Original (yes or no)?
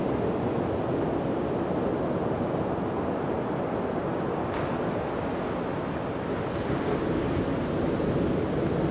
yes